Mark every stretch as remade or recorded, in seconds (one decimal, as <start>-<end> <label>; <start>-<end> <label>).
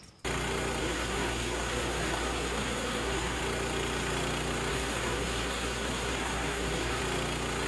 0.0-0.8 recorded; 0.8-3.4 remade; 3.4-4.7 recorded; 4.7-7.0 remade; 7.0-7.7 recorded